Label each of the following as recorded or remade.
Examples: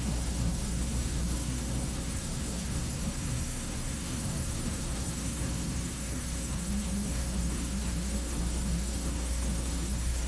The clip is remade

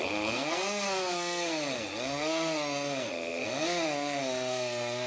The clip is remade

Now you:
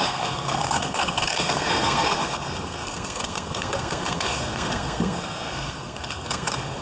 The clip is remade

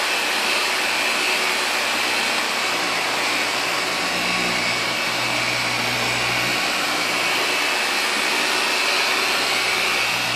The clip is recorded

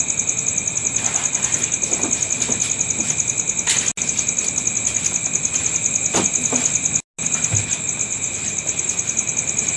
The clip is recorded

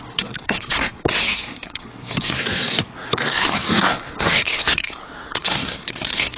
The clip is remade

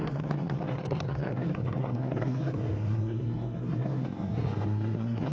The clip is remade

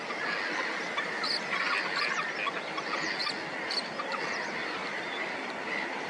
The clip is recorded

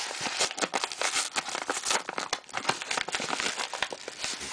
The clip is recorded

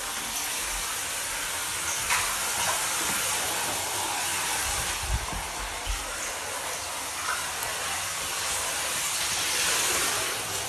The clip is recorded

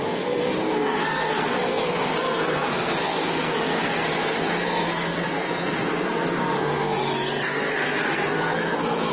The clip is remade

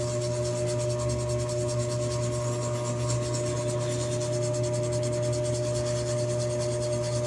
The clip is recorded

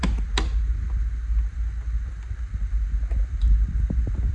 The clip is recorded